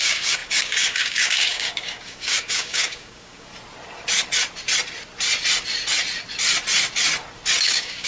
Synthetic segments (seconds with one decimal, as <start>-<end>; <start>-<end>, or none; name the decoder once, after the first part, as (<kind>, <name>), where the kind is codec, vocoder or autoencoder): 0.0-3.5 (codec, DAC); 7.6-8.1